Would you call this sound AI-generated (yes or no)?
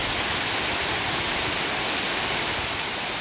no